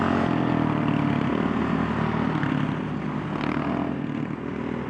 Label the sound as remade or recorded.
recorded